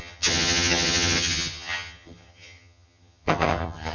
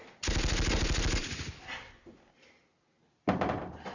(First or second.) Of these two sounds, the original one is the second